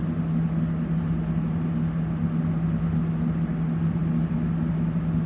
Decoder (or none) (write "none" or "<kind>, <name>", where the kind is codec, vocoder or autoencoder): none